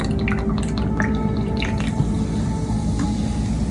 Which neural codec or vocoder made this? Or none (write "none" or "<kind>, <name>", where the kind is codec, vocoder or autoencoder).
none